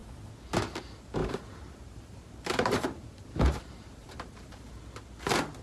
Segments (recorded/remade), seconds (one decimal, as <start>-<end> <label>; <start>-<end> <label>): 0.0-1.2 recorded; 1.2-4.6 remade; 4.6-5.6 recorded